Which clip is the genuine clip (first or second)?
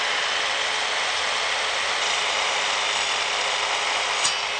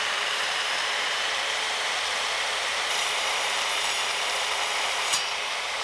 first